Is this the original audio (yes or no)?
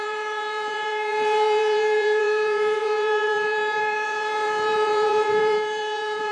no